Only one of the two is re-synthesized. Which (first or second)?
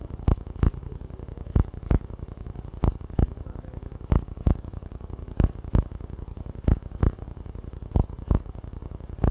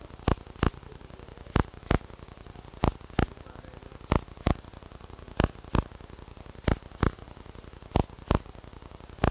first